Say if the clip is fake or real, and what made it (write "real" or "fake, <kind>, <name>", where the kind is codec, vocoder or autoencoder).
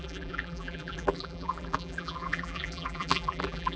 fake, vocoder, BigVGAN v2